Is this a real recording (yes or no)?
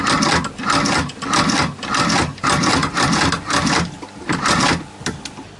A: yes